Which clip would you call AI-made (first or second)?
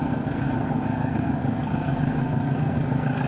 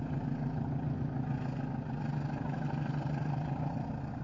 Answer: first